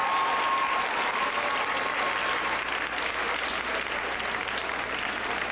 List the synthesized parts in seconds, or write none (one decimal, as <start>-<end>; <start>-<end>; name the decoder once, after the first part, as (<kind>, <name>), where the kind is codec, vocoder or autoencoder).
none